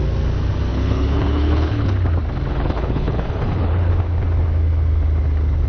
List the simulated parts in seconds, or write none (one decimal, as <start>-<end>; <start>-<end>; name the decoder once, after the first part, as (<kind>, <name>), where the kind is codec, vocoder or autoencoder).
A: 0.7-1.9 (codec, HILCodec); 2.5-3.9

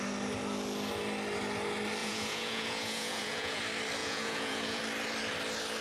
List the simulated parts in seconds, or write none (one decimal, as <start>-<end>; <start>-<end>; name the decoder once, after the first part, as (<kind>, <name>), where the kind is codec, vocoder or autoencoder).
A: 2.0-3.6 (vocoder, Vocos); 4.0-4.8

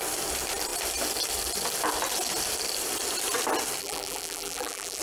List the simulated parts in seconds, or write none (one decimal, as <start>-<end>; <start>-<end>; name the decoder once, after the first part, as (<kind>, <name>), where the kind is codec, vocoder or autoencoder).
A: 3.8-5.0 (vocoder, BigVGAN v2)

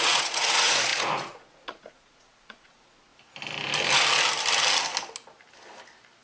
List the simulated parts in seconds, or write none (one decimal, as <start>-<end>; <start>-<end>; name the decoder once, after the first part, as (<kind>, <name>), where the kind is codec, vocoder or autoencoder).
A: 0.0-3.1 (vocoder, Vocos)